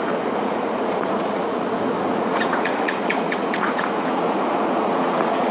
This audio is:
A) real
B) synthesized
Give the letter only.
B